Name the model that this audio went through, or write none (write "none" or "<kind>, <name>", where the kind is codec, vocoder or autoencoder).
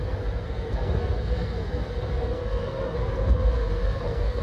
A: codec, SNAC